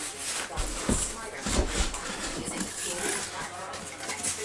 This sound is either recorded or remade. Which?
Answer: recorded